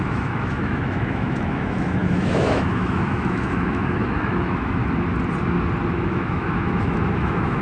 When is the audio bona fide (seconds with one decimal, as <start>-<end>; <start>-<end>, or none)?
4.8-5.9